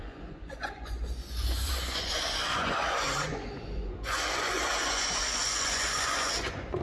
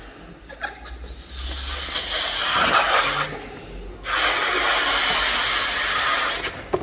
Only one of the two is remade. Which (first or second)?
first